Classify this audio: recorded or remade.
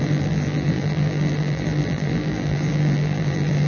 remade